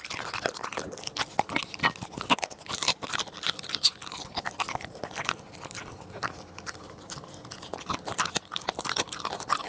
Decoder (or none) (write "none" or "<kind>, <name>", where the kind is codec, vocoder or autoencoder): none